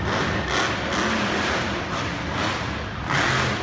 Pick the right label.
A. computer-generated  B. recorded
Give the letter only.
B